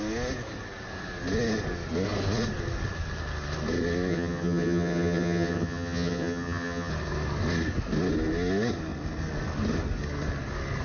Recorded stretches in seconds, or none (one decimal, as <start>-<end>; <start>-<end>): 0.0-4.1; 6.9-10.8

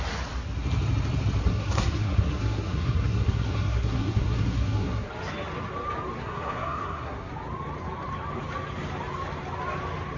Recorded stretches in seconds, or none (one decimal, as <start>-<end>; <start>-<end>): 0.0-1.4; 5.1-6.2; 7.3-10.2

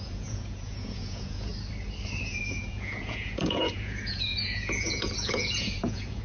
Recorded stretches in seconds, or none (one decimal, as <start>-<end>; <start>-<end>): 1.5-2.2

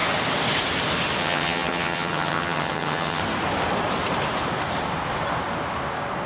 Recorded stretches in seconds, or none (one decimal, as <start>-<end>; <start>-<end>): 0.0-1.2; 3.2-6.3

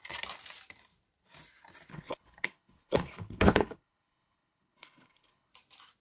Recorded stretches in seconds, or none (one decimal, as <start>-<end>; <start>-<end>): 0.0-1.9; 5.5-6.0

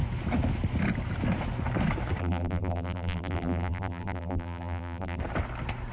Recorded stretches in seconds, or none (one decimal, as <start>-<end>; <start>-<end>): 0.0-2.2; 5.2-5.9